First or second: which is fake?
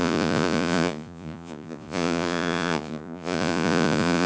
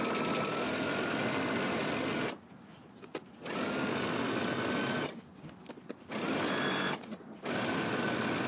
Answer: first